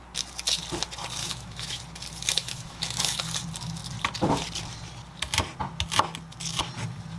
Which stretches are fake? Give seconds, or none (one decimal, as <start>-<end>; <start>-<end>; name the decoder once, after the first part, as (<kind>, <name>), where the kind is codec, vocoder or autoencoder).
1.2-1.8 (autoencoder, DAC-VAE); 2.4-3.2